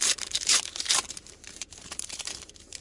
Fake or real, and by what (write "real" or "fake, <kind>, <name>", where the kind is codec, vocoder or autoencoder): fake, vocoder, BigVGAN v2